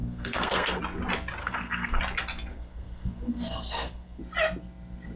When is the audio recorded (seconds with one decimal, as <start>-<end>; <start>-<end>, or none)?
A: 0.8-1.4; 2.0-2.5; 4.2-5.2